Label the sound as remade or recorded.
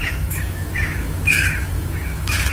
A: remade